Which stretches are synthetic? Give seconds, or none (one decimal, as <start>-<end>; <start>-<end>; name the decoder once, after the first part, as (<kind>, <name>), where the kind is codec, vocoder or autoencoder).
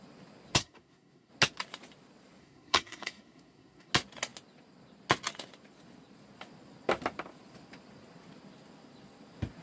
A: 0.6-1.3 (codec, SNAC); 2.4-3.9